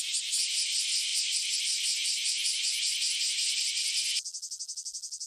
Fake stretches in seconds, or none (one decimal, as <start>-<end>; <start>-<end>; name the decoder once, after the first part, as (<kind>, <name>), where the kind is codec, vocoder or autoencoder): 0.0-2.0 (vocoder, BigVGAN v2); 3.3-4.0